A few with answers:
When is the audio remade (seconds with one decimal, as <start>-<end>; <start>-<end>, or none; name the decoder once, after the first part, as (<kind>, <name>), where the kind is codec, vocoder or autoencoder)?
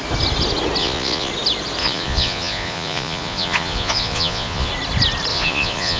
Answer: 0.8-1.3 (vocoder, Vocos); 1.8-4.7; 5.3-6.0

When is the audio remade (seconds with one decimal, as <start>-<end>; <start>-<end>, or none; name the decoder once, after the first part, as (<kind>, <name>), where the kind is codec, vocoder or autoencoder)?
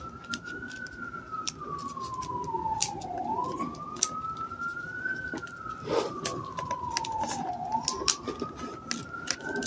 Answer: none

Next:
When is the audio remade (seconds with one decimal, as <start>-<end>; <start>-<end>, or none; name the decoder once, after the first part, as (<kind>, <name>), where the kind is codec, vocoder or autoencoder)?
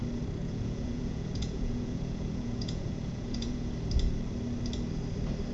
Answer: 0.4-3.7 (vocoder, Vocos)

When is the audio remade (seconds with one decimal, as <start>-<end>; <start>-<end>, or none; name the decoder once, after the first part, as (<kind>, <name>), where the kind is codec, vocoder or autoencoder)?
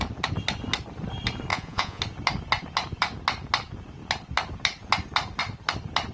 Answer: 1.5-2.0 (vocoder, Vocos)